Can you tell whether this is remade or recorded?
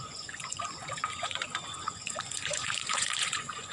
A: remade